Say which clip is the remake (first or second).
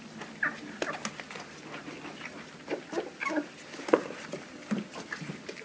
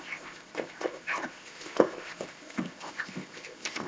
second